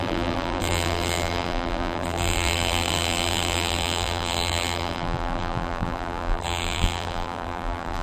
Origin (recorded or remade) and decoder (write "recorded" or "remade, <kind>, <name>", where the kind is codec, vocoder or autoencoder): remade, vocoder, BigVGAN v2